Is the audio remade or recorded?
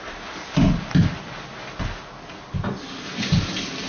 recorded